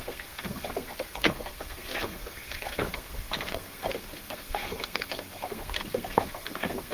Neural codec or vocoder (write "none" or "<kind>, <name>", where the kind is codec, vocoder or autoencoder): codec, SNAC